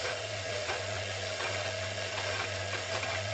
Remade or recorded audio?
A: remade